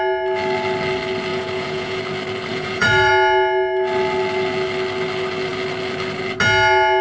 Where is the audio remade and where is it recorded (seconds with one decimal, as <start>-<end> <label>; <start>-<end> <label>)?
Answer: 0.0-1.3 recorded; 1.3-2.0 remade; 2.0-2.5 recorded; 2.5-3.1 remade; 3.1-7.0 recorded